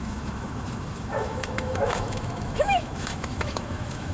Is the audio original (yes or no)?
no